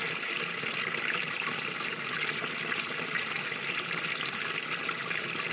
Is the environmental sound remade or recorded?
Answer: recorded